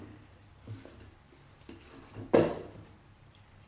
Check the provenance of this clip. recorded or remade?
recorded